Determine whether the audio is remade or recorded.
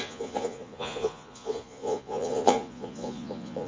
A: remade